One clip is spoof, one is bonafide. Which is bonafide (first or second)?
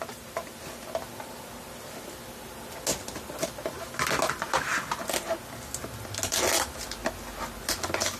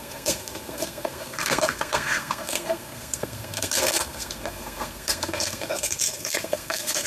first